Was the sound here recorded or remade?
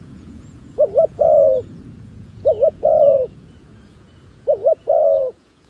remade